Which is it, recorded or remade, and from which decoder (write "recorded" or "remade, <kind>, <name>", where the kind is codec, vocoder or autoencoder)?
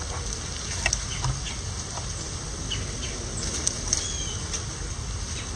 recorded